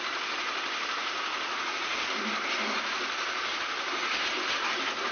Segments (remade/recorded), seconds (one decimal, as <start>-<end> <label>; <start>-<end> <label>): 0.0-5.1 recorded